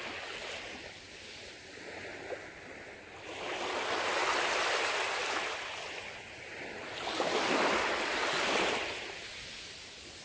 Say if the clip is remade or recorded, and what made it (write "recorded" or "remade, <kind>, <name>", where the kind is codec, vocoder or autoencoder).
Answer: recorded